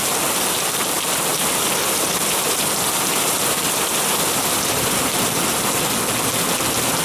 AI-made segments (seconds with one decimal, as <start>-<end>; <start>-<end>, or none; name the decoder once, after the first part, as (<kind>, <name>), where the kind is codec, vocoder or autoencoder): 1.3-5.1 (vocoder, BigVGAN v2)